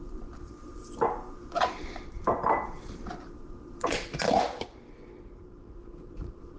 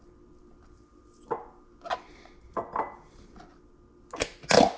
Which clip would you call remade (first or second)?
first